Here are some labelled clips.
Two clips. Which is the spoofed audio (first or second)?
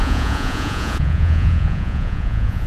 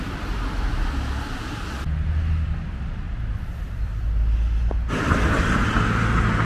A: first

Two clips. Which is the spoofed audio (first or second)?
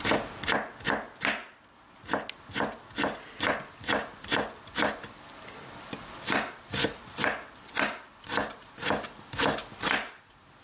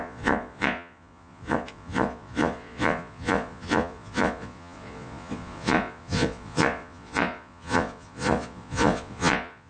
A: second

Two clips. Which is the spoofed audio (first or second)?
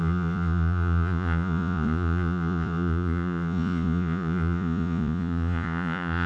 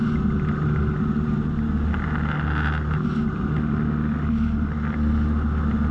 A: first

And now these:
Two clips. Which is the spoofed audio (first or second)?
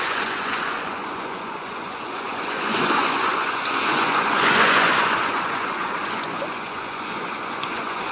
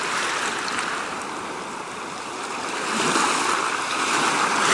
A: first